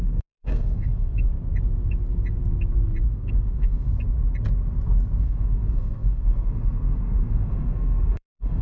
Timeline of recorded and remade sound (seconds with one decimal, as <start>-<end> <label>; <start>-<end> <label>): 0.0-1.3 remade; 1.3-3.1 recorded; 3.1-3.9 remade; 3.9-5.2 recorded; 5.2-8.6 remade